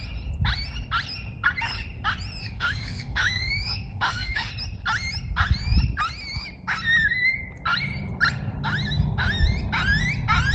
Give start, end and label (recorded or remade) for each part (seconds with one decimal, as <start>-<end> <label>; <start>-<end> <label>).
0.0-2.4 recorded; 2.4-4.5 remade; 4.5-10.5 recorded